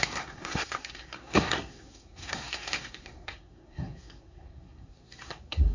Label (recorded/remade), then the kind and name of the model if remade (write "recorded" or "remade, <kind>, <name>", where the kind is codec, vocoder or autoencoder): remade, codec, SNAC